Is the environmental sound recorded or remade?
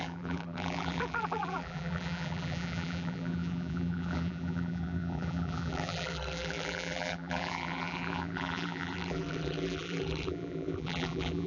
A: remade